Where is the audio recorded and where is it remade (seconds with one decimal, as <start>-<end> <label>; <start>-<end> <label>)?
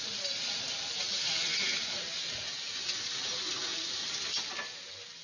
0.0-3.7 recorded; 3.7-4.8 remade; 4.8-5.2 recorded